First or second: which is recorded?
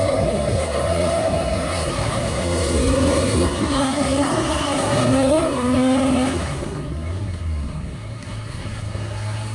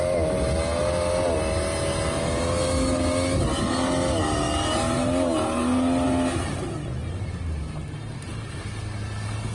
second